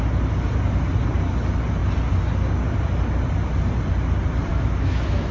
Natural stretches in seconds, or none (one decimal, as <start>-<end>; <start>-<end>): 0.0-4.5